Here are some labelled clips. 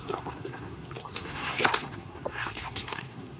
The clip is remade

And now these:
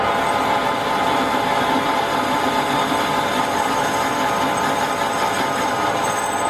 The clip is recorded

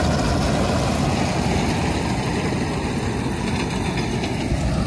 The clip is recorded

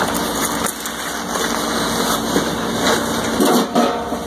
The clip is recorded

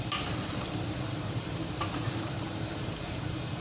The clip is remade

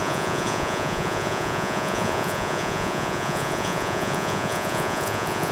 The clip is remade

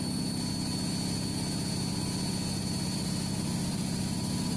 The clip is recorded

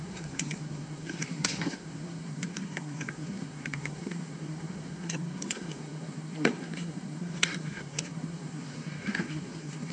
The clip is remade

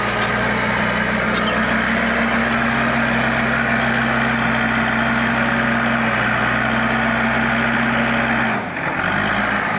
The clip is recorded